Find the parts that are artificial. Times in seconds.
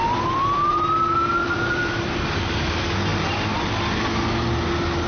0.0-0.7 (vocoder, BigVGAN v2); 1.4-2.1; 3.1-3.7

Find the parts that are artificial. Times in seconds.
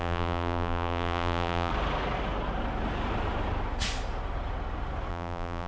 0.0-1.7 (vocoder, BigVGAN v2); 5.1-5.7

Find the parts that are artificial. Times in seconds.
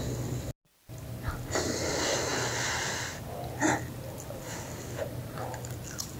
none